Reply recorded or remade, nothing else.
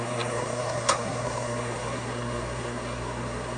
remade